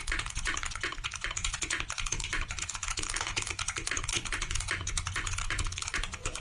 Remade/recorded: remade